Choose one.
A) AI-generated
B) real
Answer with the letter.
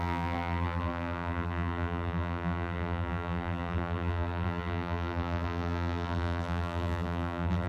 A